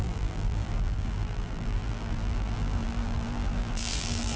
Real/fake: fake